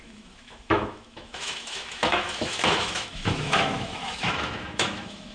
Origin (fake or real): fake